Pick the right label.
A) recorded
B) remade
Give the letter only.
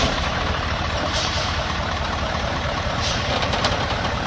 B